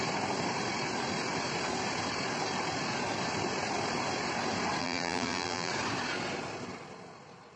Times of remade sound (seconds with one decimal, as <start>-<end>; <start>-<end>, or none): 4.8-5.7

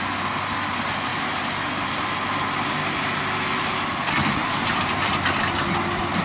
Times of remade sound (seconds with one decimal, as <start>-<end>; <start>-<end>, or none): 4.4-6.2

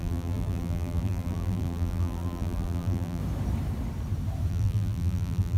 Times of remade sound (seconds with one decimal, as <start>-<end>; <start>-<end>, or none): 0.0-3.2; 4.5-5.6